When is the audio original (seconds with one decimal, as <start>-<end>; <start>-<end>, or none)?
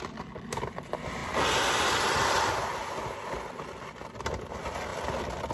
0.0-5.5